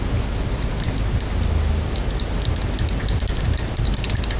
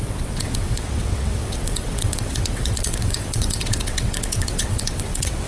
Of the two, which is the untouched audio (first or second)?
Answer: first